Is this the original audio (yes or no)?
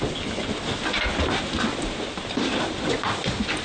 yes